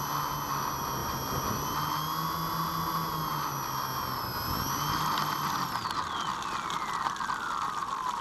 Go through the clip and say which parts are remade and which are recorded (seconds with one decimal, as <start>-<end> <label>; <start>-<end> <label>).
0.0-8.2 recorded